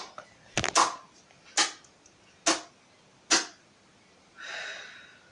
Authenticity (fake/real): real